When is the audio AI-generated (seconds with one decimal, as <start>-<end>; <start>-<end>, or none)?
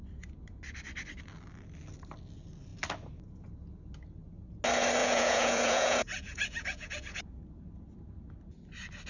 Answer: 5.0-7.4